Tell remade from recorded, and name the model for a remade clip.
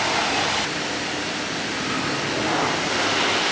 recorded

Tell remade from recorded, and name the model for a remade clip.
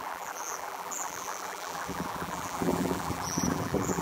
remade, vocoder, BigVGAN v2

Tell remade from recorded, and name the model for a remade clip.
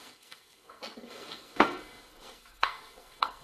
remade, codec, SNAC